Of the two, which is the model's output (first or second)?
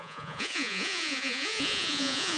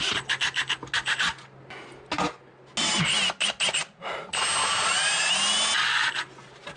first